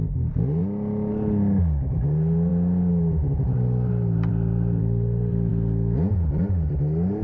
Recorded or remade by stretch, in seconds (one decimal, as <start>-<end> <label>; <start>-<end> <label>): 0.0-7.2 recorded